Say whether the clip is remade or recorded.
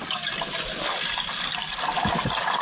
recorded